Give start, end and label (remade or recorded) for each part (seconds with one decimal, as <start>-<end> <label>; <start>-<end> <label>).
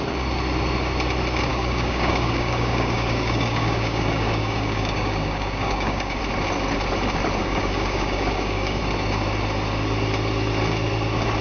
0.0-1.5 recorded; 1.5-6.2 remade; 6.2-7.4 recorded; 7.4-8.8 remade; 8.8-11.4 recorded